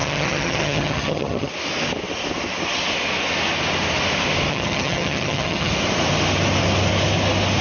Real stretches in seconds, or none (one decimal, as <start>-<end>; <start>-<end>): 1.5-4.5; 5.7-7.6